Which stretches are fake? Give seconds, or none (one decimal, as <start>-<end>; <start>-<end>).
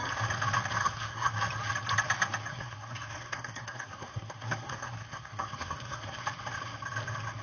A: 0.8-1.3; 2.5-6.2